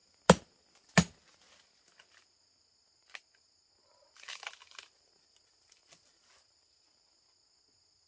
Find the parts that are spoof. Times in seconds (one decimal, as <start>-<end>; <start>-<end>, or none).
none